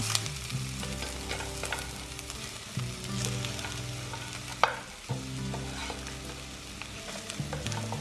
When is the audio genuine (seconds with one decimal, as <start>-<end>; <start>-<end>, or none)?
0.0-8.0